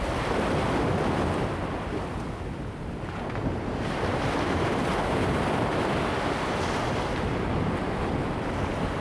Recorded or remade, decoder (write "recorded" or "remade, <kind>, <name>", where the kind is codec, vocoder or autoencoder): recorded